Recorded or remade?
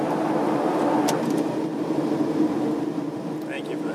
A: recorded